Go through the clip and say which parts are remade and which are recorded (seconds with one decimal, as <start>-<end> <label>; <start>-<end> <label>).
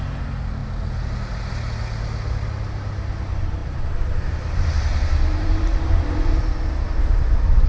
0.0-3.6 recorded; 3.6-4.2 remade; 4.2-4.9 recorded; 4.9-6.4 remade; 6.4-7.7 recorded